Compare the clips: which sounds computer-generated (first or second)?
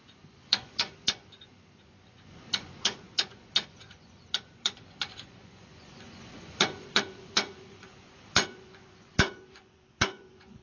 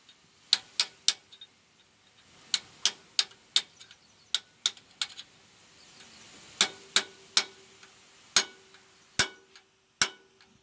first